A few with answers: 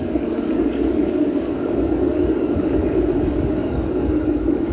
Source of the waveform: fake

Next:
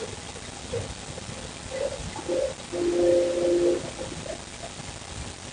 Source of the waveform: real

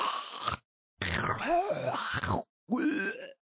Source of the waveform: real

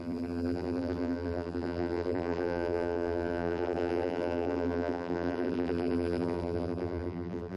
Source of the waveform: fake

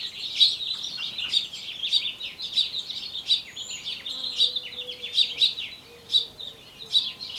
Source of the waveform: real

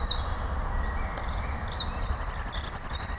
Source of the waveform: real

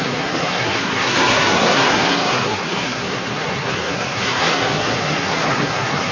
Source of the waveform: fake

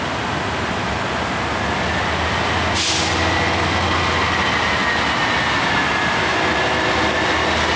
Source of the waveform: real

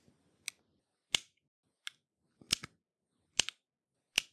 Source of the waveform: real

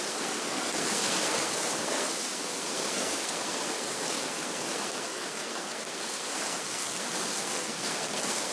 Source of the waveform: fake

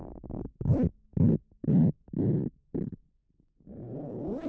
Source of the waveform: real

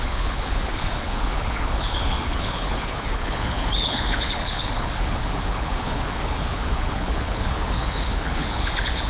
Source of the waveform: fake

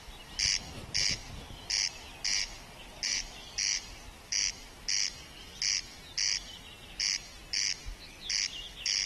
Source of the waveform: real